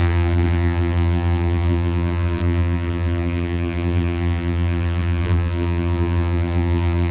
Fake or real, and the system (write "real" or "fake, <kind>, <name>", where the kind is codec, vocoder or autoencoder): fake, vocoder, BigVGAN v2